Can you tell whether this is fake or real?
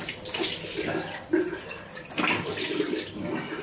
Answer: real